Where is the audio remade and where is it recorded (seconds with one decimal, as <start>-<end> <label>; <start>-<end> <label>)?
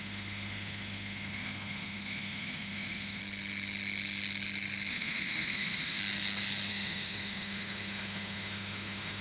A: 0.0-3.2 remade; 3.2-4.9 recorded; 4.9-6.0 remade; 6.0-6.7 recorded; 6.7-9.2 remade